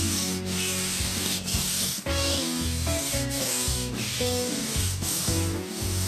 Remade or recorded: remade